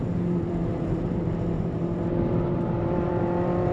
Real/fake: fake